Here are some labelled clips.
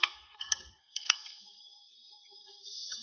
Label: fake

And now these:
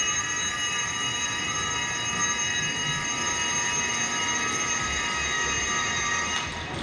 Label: real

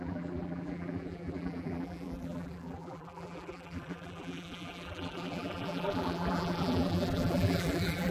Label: fake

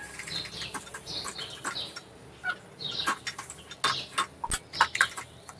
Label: real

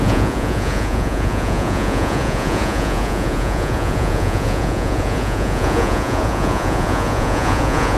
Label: fake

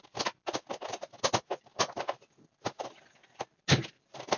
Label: real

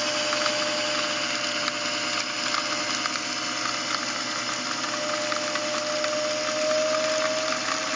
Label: real